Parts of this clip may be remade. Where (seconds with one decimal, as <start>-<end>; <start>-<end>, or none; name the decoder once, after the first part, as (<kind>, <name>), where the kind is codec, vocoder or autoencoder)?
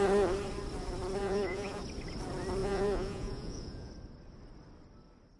1.2-1.8 (vocoder, Vocos); 2.6-3.9